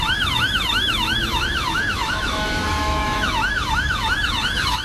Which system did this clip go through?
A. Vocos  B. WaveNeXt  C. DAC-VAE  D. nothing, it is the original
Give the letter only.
C